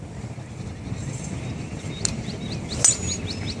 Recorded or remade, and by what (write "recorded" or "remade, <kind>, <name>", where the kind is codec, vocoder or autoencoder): recorded